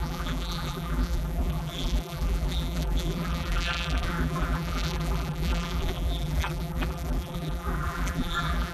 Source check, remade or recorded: remade